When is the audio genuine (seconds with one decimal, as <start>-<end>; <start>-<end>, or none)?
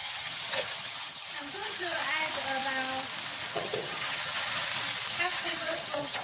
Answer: 2.0-3.5; 4.7-5.2